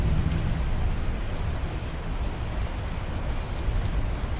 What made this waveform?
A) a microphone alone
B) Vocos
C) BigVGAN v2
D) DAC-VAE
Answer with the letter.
A